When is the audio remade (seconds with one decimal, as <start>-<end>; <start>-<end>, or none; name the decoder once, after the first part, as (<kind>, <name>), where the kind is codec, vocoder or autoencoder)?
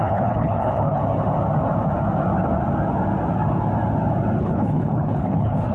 0.0-1.0 (codec, HILCodec); 4.4-5.7